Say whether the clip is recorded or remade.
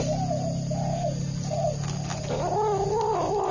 recorded